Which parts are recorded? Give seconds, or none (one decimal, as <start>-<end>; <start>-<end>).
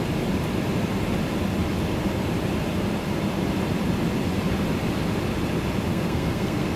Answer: 0.0-5.9